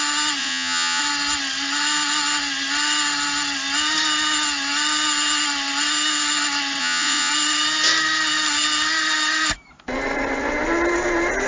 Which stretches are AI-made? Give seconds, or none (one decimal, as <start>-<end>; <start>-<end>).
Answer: 0.4-1.0; 6.8-7.3